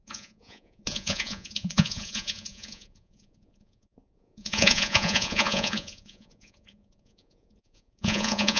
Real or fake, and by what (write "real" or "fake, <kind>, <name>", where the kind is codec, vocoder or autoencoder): fake, vocoder, Vocos